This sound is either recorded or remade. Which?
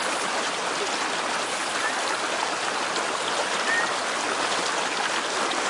recorded